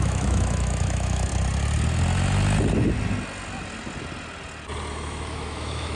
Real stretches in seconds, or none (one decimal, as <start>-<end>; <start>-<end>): 1.3-4.9